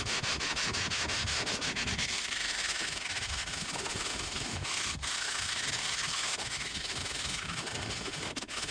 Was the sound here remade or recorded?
remade